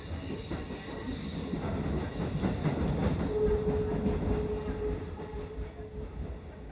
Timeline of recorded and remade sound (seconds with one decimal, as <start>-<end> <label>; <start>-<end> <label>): 0.0-6.7 recorded